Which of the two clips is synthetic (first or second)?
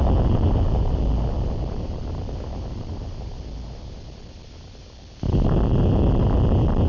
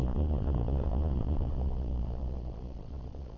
second